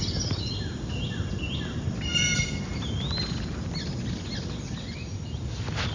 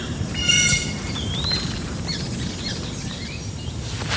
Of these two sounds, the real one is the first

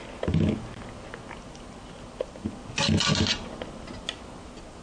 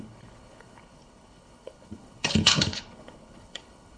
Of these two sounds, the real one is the first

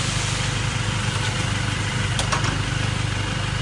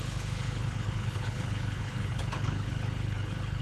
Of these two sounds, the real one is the first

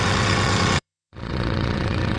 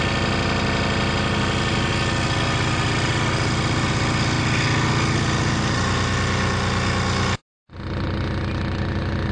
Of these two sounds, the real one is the second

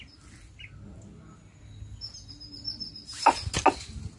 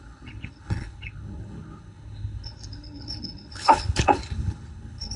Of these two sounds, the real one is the first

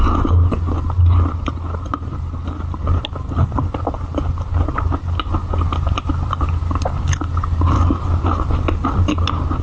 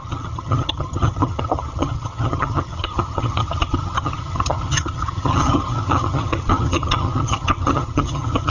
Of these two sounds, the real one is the first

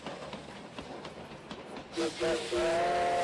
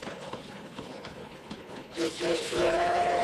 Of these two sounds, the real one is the first